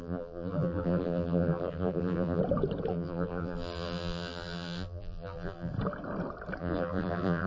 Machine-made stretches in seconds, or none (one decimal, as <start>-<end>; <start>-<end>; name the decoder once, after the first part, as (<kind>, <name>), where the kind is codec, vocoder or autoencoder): 0.0-2.4 (vocoder, BigVGAN v2); 2.9-5.7; 6.6-7.5